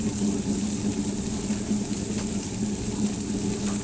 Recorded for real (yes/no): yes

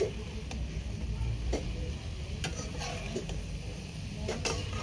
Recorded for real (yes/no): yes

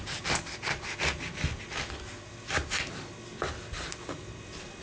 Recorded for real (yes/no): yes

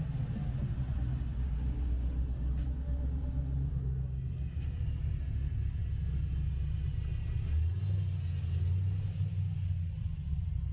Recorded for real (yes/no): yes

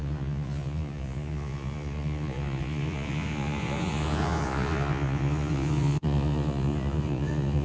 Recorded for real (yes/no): no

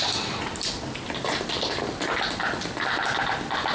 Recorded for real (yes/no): yes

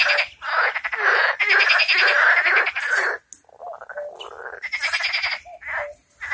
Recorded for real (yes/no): yes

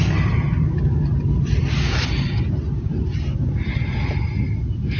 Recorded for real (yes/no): yes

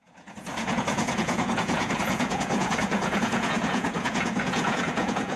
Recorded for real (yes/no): no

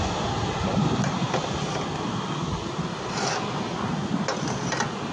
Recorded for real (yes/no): yes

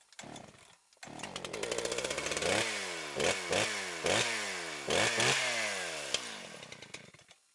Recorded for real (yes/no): yes